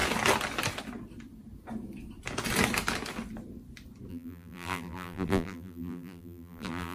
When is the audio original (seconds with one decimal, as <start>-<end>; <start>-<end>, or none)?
0.0-4.1